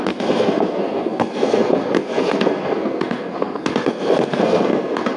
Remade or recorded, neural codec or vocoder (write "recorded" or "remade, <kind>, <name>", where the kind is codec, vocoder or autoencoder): remade, codec, SNAC